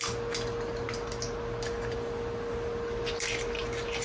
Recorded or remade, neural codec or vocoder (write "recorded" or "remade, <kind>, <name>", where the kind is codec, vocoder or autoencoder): recorded